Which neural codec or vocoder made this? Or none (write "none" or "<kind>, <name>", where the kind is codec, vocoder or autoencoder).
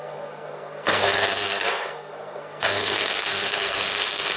codec, SNAC